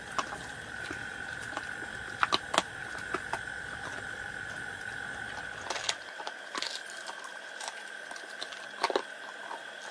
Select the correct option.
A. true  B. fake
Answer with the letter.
A